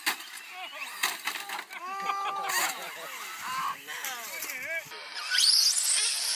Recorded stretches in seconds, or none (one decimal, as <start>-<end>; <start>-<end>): 0.0-6.3

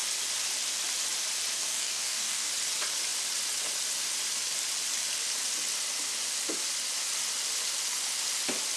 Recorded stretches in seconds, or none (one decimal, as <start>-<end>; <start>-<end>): 0.0-1.6; 2.5-8.8

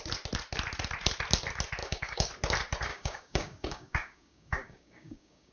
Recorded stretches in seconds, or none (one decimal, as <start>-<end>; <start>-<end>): 0.0-1.8; 2.3-2.9

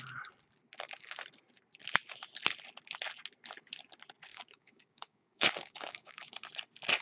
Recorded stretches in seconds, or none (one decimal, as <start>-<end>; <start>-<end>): 0.0-4.3; 6.3-7.0

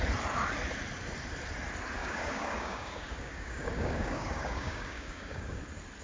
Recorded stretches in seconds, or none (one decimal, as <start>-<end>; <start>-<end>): 0.0-2.0; 5.6-6.0

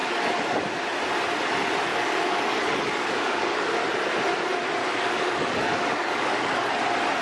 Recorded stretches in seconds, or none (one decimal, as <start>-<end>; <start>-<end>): 0.6-1.9; 3.7-4.8; 6.8-7.2

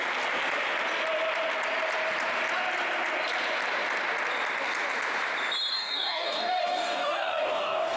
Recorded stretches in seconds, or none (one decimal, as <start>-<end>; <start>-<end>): 0.0-5.7